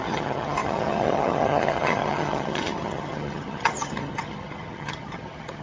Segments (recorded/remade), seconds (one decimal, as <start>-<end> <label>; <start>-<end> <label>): 0.0-5.6 remade